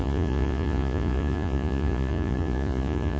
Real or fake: fake